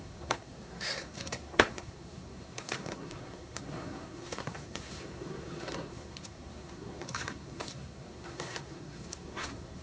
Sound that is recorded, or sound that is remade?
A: remade